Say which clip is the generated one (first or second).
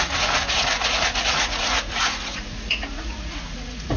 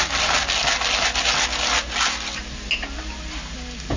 first